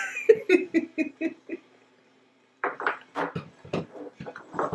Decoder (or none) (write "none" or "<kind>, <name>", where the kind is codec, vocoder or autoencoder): vocoder, BigVGAN v2